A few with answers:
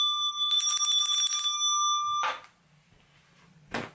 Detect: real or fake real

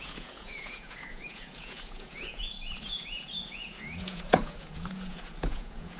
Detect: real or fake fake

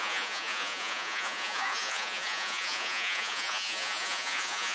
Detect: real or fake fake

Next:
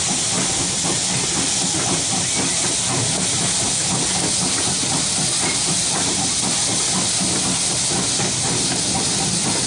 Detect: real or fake real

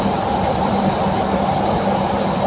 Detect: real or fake real